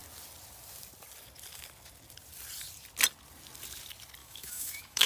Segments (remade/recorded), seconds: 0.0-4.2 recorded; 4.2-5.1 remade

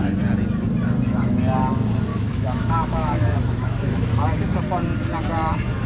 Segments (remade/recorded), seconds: 0.0-2.1 recorded; 2.1-4.1 remade; 4.1-5.9 recorded

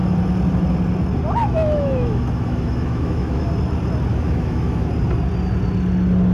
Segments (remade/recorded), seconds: 0.0-1.4 recorded; 1.4-3.5 remade; 3.5-4.1 recorded; 4.1-4.9 remade; 4.9-6.3 recorded

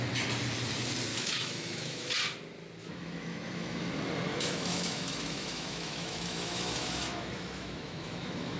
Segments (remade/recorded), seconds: 0.0-1.1 recorded; 1.1-2.1 remade; 2.1-2.8 recorded; 2.8-3.9 remade; 3.9-4.3 recorded; 4.3-8.6 remade

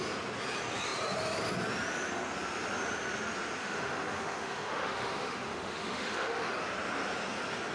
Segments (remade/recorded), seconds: 0.0-3.6 recorded; 3.6-6.5 remade; 6.5-7.7 recorded

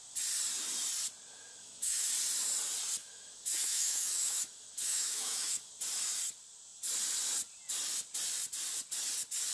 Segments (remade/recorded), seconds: 0.0-1.3 recorded; 1.3-2.1 remade; 2.1-3.0 recorded; 3.0-5.7 remade; 5.7-9.5 recorded

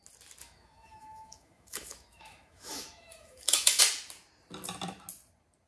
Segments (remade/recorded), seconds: 0.0-0.4 recorded; 0.4-3.8 remade; 3.8-5.7 recorded